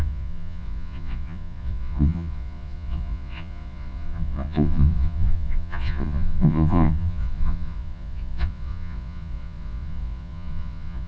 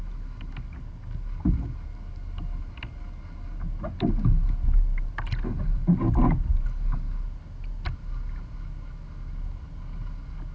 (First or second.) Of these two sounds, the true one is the second